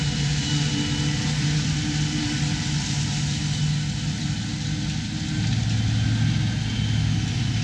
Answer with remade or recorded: recorded